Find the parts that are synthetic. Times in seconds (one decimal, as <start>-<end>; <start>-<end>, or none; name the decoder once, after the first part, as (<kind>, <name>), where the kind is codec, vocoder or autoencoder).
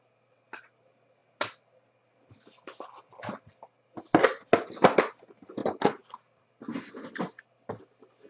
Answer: none